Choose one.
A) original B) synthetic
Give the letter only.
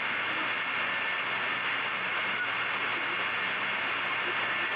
A